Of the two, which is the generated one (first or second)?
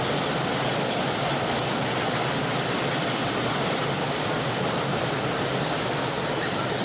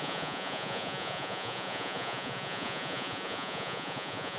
second